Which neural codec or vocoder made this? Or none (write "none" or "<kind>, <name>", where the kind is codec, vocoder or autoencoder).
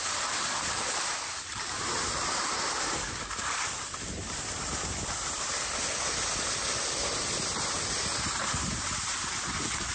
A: none